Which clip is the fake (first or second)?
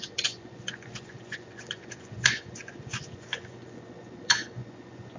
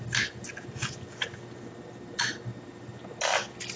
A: first